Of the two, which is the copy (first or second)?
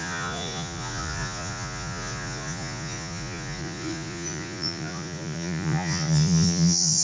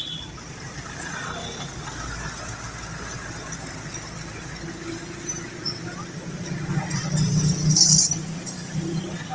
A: first